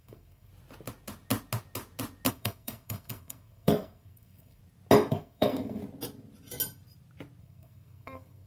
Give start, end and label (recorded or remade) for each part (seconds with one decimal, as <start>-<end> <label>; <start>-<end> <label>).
0.0-0.5 remade; 0.5-2.3 recorded; 2.3-4.6 remade; 4.6-5.1 recorded; 5.1-5.8 remade; 5.8-7.4 recorded; 7.4-8.5 remade